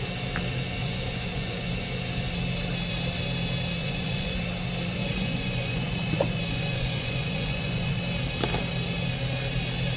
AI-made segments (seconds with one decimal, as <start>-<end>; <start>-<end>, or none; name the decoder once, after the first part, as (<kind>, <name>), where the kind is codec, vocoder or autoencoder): 0.8-1.8 (vocoder, Vocos); 3.8-4.4; 5.0-8.0